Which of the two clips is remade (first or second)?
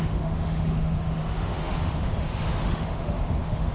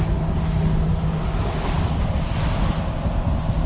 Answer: first